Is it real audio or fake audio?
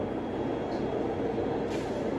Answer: real